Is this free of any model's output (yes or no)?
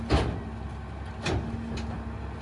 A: yes